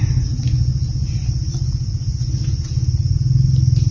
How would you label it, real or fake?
real